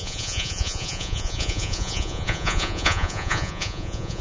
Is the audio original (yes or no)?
no